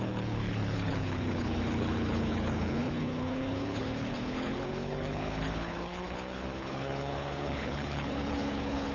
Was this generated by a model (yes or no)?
yes